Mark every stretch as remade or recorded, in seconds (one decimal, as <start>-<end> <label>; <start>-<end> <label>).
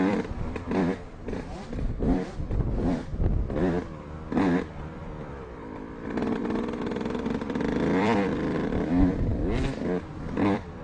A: 0.0-3.1 remade; 3.1-4.7 recorded; 4.7-9.3 remade; 9.3-10.0 recorded; 10.0-10.8 remade